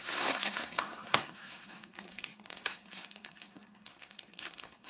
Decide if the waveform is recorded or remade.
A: remade